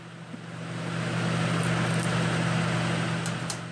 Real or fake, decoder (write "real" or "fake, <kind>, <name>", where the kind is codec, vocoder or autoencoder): real